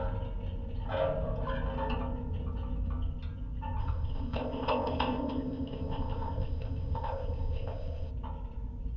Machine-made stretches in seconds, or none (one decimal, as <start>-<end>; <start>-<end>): 3.8-8.1